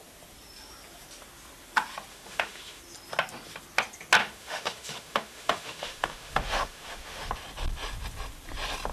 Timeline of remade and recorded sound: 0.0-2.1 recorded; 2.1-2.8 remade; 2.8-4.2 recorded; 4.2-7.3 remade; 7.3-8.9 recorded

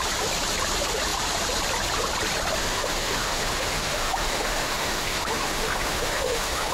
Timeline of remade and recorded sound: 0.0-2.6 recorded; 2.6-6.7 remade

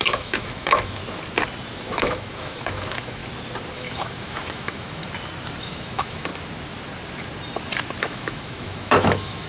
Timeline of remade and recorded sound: 0.0-1.0 remade; 1.0-1.8 recorded; 1.8-3.2 remade; 3.2-3.7 recorded; 3.7-5.0 remade; 5.0-5.6 recorded; 5.6-6.3 remade; 6.3-8.0 recorded; 8.0-9.5 remade

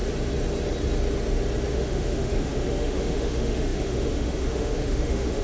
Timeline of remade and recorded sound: 0.0-1.7 recorded; 1.7-5.4 remade

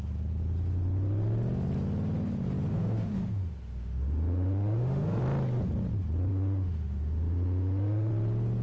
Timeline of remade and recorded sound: 0.0-2.7 recorded; 2.7-5.2 remade; 5.2-6.3 recorded; 6.3-8.1 remade; 8.1-8.6 recorded

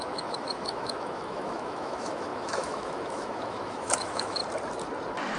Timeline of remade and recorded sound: 0.0-4.4 remade; 4.4-5.4 recorded